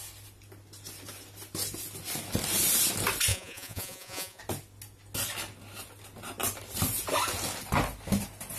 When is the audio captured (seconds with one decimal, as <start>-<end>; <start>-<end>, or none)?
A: 0.0-3.3; 4.4-8.6